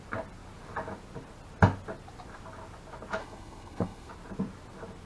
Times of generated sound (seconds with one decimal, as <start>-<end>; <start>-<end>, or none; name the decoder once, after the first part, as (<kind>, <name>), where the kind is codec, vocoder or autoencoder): 3.2-4.1 (codec, SNAC)